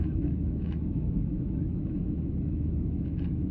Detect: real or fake fake